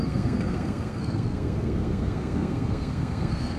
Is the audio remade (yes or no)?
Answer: yes